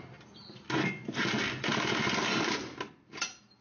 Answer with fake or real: real